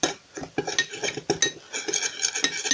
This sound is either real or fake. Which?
real